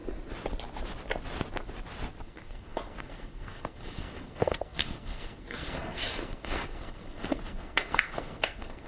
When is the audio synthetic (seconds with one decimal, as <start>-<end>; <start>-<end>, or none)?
2.2-8.9